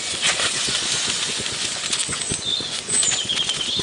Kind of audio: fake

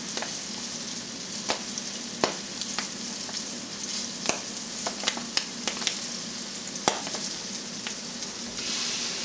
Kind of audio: real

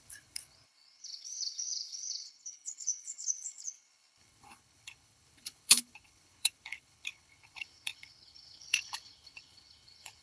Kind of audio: fake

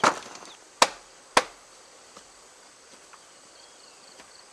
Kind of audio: real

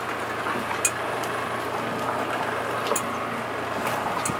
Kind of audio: real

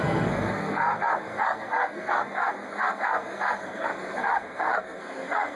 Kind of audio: fake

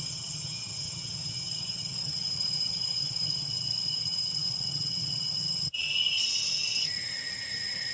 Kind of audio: fake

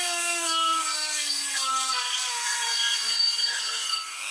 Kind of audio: fake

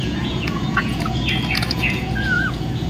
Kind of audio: fake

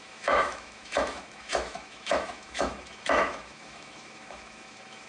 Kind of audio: fake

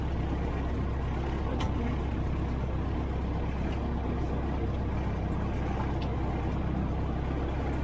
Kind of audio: real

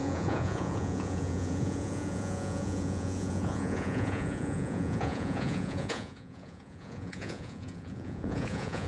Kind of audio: fake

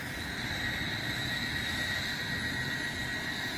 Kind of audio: real